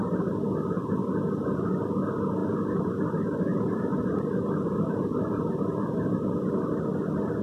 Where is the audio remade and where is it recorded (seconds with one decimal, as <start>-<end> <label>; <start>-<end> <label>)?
0.0-7.4 recorded